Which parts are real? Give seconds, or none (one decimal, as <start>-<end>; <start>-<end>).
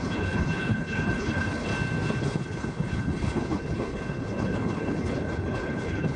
1.7-2.2